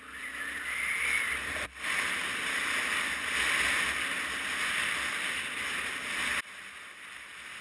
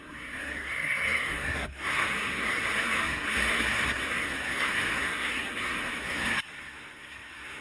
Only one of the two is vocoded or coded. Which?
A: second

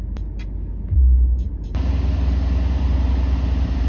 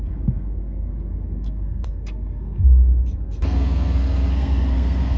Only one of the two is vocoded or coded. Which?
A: second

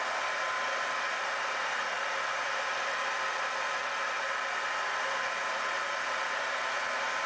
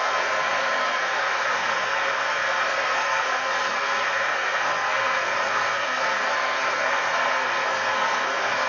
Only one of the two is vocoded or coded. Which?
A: second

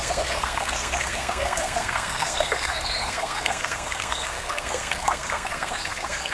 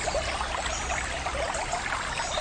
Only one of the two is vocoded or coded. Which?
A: first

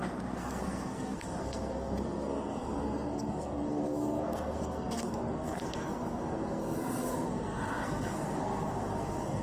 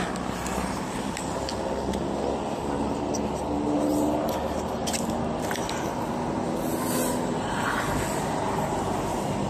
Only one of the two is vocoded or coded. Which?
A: first